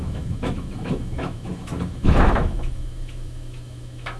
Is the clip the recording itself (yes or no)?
no